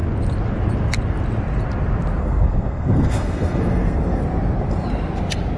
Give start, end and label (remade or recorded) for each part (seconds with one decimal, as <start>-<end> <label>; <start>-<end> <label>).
0.0-2.2 recorded; 2.2-4.2 remade; 4.2-5.6 recorded